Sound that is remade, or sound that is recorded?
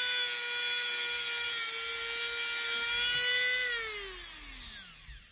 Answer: recorded